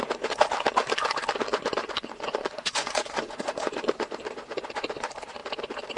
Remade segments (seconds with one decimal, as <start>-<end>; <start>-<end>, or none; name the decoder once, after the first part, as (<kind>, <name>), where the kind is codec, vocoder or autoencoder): 1.5-3.9 (vocoder, Vocos)